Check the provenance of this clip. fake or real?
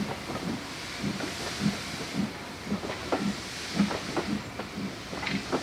real